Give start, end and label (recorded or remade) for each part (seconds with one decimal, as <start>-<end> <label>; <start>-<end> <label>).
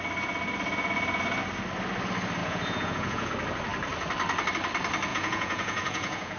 0.0-2.4 recorded; 2.4-3.3 remade; 3.3-5.1 recorded; 5.1-6.4 remade